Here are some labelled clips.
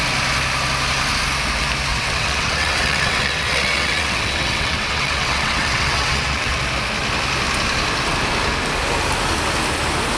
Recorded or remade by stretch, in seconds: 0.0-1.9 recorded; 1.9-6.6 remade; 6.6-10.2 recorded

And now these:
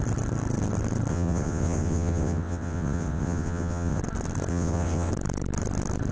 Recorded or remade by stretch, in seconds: 0.0-1.1 recorded; 1.1-4.0 remade; 4.0-4.5 recorded; 4.5-5.1 remade; 5.1-6.1 recorded

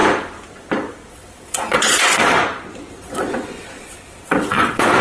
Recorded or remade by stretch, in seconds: 0.0-1.1 recorded; 1.1-2.4 remade; 2.4-2.9 recorded; 2.9-5.0 remade

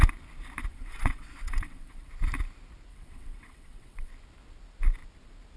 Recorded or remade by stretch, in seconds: 0.0-0.7 recorded; 0.7-2.1 remade; 2.1-2.9 recorded; 2.9-4.1 remade; 4.1-5.6 recorded